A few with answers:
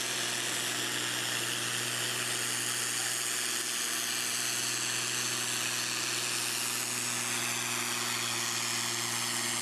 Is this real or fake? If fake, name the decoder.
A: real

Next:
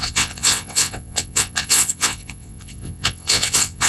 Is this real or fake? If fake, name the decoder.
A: fake, vocoder, WaveNeXt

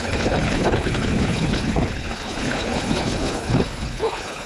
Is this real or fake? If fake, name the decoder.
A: fake, codec, HILCodec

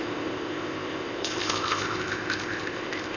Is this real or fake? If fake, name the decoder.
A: fake, codec, ZipCodec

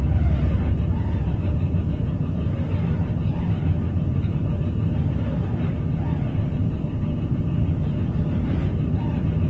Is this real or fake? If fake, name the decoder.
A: real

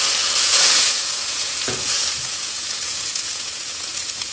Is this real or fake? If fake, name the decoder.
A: fake, vocoder, Vocos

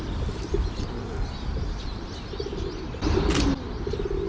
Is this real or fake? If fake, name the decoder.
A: real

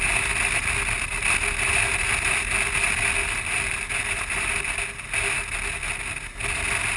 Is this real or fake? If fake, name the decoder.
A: real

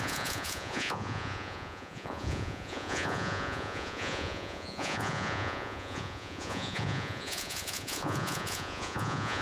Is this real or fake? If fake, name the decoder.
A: fake, vocoder, Vocos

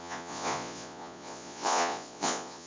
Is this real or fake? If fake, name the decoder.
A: fake, vocoder, Vocos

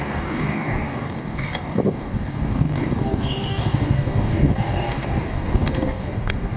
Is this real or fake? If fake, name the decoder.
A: fake, codec, DAC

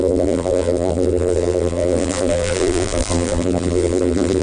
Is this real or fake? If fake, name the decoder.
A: fake, vocoder, BigVGAN v2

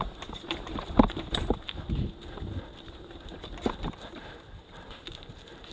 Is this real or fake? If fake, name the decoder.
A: fake, vocoder, BigVGAN v2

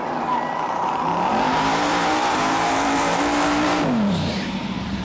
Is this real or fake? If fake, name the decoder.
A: fake, vocoder, BigVGAN v2